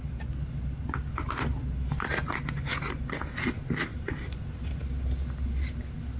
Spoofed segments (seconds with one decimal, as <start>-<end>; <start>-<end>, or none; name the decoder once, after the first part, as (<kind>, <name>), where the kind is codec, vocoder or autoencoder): none